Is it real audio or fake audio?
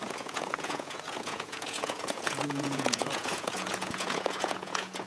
fake